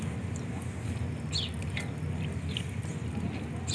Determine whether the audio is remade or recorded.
recorded